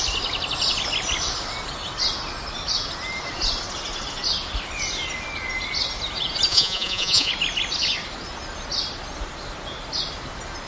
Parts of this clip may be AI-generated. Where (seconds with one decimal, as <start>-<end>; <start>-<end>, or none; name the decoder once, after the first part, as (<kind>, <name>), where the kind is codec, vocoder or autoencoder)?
6.5-7.3 (vocoder, Vocos)